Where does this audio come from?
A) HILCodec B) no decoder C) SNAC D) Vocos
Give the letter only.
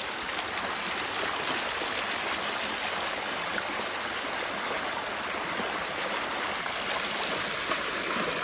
B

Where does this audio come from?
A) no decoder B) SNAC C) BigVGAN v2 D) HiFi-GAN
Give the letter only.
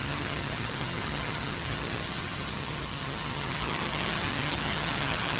D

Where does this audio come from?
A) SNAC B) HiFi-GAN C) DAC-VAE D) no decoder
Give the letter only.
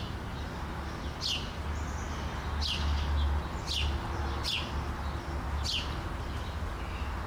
D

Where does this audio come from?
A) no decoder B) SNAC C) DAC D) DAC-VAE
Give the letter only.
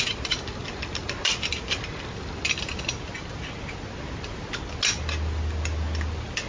A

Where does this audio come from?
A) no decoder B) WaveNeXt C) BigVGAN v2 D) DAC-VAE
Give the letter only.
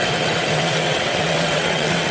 B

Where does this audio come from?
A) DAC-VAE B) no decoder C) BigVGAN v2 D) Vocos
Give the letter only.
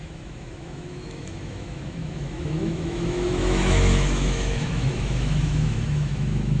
A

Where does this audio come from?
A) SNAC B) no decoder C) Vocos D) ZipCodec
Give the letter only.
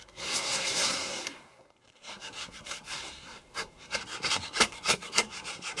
A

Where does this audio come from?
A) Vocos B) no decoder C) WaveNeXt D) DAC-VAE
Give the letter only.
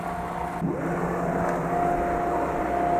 B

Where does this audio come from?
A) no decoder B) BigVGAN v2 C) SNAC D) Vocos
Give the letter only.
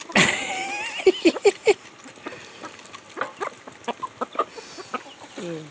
A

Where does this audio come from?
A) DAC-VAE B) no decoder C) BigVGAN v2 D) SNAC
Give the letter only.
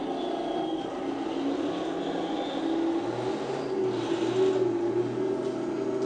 B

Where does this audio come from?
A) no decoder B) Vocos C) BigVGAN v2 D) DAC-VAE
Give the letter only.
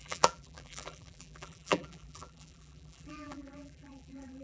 C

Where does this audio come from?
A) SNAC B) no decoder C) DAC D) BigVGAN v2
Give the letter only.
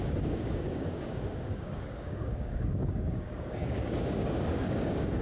C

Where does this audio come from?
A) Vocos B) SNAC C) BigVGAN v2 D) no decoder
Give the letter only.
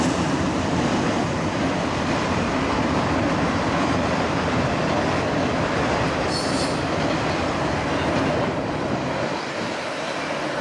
D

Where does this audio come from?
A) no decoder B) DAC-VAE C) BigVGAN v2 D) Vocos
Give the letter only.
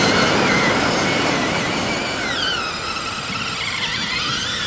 A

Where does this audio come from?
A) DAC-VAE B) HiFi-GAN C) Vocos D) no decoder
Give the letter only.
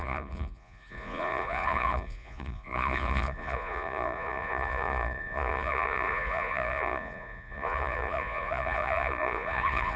C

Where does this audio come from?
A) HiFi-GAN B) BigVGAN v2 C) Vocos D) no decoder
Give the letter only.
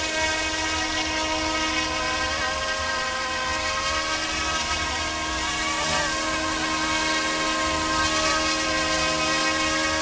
D